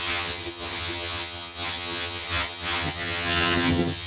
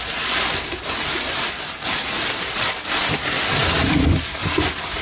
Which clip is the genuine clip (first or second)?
second